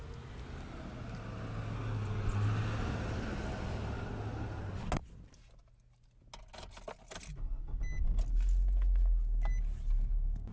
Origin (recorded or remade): recorded